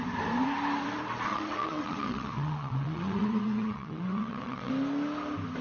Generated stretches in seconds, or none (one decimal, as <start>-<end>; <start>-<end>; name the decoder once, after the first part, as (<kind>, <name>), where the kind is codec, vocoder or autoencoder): 1.3-4.7 (vocoder, WaveNeXt)